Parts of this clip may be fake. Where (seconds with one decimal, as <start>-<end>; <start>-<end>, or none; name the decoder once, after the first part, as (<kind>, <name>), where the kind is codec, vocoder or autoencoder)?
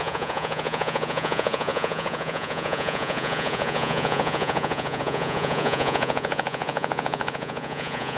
0.0-8.2 (vocoder, Vocos)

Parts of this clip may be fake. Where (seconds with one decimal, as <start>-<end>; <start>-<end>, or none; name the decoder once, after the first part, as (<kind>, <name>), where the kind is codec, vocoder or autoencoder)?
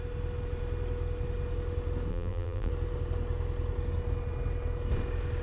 2.1-2.7 (vocoder, BigVGAN v2)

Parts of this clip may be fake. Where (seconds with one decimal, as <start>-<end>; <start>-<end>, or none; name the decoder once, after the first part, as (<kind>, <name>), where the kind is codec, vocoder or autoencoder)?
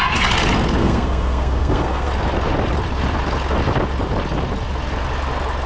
0.8-2.1 (codec, SNAC)